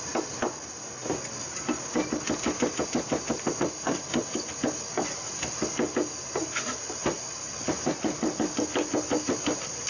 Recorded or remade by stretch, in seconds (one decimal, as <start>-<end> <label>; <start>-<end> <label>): 0.0-9.9 recorded